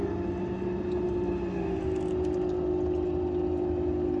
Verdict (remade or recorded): recorded